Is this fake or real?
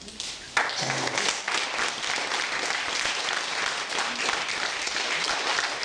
real